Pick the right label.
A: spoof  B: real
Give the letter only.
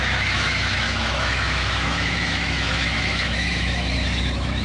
A